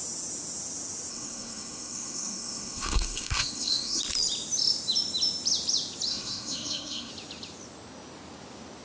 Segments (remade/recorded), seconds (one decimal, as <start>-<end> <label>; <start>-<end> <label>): 0.0-1.1 recorded; 1.1-4.0 remade; 4.0-6.1 recorded; 6.1-7.1 remade; 7.1-8.8 recorded